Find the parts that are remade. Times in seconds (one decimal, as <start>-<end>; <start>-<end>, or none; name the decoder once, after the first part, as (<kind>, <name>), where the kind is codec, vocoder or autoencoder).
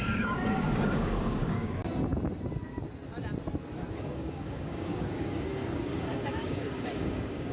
0.0-1.8 (codec, DAC); 3.9-7.5